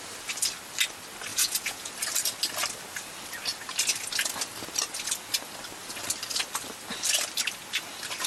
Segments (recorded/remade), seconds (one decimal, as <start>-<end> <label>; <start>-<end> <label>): 0.0-1.3 recorded; 1.3-1.9 remade; 1.9-8.3 recorded